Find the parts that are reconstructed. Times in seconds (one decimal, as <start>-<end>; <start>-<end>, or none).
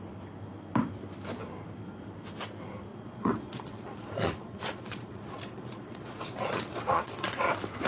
2.9-7.5